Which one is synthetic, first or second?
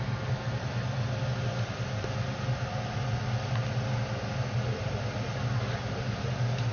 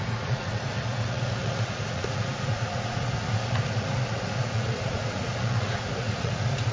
second